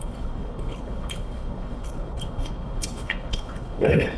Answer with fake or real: fake